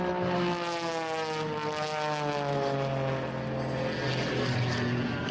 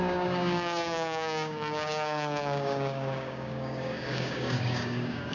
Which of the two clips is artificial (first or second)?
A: second